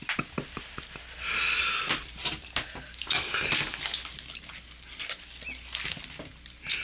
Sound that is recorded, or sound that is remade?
recorded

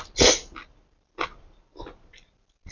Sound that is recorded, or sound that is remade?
recorded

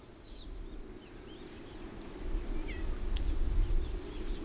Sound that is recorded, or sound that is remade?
recorded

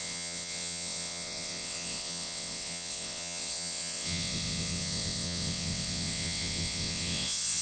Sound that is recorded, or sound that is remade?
remade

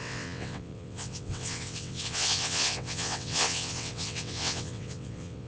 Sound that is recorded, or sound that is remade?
remade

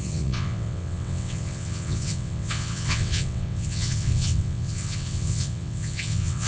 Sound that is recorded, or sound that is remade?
remade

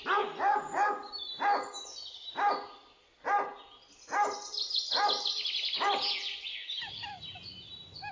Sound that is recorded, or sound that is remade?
recorded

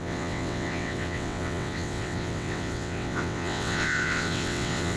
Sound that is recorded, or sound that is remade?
remade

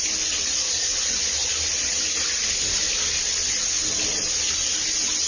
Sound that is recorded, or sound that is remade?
recorded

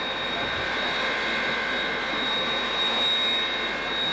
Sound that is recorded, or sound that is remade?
recorded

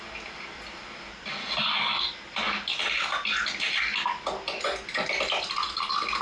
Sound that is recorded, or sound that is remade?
recorded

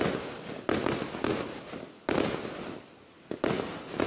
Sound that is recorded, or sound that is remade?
recorded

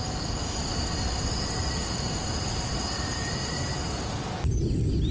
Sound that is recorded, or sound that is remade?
recorded